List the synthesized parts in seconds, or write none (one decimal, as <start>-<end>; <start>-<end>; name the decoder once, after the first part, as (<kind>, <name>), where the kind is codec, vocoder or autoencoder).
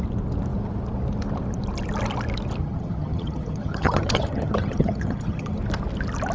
2.6-5.6 (vocoder, HiFi-GAN)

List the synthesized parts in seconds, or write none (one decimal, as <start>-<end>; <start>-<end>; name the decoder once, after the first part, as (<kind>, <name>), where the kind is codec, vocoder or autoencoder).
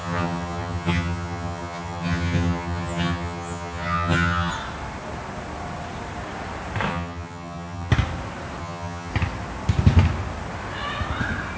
0.0-4.5 (vocoder, HiFi-GAN); 6.9-7.9; 8.6-9.1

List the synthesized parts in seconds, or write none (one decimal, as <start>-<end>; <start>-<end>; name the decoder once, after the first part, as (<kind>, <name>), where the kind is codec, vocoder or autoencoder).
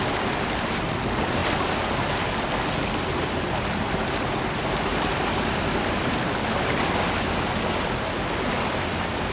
none